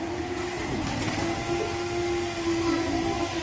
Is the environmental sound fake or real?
real